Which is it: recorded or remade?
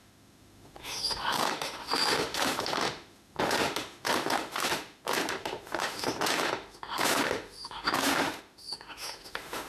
remade